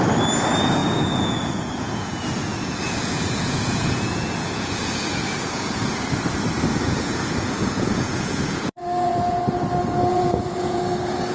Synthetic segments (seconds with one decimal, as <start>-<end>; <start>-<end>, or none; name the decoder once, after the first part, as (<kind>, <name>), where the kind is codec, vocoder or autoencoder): 0.8-5.9 (vocoder, Vocos); 6.7-9.4; 10.1-10.8